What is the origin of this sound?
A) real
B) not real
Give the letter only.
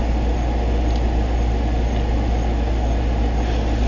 A